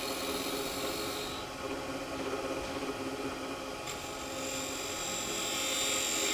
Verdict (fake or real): real